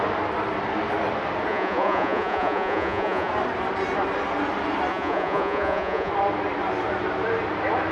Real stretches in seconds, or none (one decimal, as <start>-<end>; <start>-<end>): 0.0-1.5; 3.3-4.9; 6.1-7.9